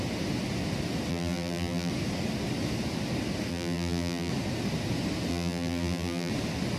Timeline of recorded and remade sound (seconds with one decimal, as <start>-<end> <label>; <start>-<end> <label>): 0.0-1.1 recorded; 1.1-1.9 remade; 1.9-3.5 recorded; 3.5-4.3 remade; 4.3-5.3 recorded; 5.3-6.3 remade; 6.3-6.8 recorded